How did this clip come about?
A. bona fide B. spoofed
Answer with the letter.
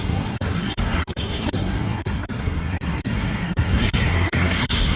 B